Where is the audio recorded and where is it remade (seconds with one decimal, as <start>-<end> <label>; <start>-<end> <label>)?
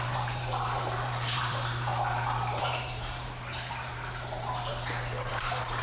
0.0-1.9 remade; 1.9-2.6 recorded; 2.6-4.7 remade; 4.7-5.3 recorded; 5.3-5.8 remade